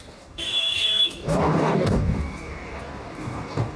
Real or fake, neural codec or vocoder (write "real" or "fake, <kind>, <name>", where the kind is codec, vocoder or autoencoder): fake, codec, DAC